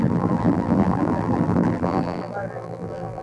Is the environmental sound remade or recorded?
remade